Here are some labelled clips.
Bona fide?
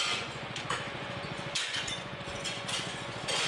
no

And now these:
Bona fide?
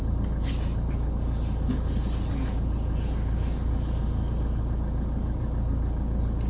yes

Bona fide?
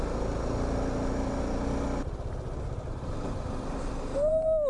yes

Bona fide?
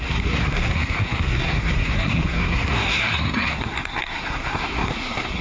no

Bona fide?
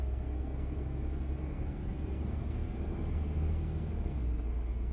no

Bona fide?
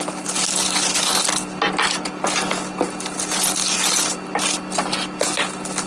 yes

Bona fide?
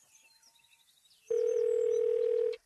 no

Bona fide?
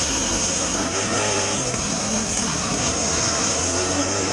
no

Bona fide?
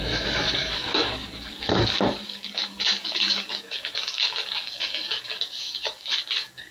no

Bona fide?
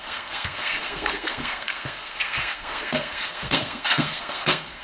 no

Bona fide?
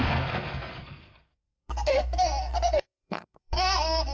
no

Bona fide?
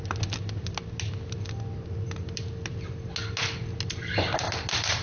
yes